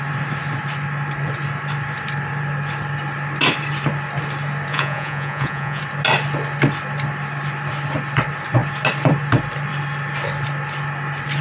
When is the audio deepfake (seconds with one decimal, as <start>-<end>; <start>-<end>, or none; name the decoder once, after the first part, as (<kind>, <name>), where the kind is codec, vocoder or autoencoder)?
4.7-5.8 (vocoder, Vocos)